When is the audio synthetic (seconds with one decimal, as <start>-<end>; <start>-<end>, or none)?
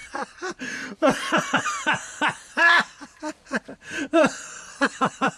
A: 0.0-5.4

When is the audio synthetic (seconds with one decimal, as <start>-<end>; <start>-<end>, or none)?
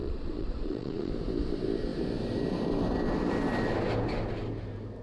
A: 0.0-1.1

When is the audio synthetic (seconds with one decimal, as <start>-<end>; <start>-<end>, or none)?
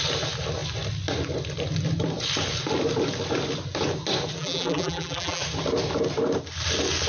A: 4.4-5.4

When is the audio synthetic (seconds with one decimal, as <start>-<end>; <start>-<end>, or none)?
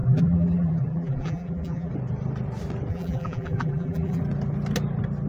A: 0.0-1.9; 2.9-4.2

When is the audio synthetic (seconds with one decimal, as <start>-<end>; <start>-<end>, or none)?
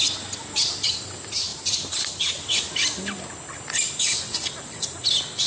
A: 1.5-2.1